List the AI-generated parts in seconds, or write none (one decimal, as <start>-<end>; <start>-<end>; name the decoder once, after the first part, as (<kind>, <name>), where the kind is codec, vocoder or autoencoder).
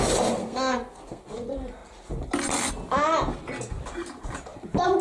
0.4-1.2 (codec, SNAC)